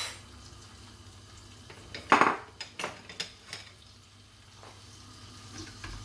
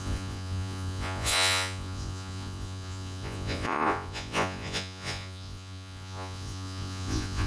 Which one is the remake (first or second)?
second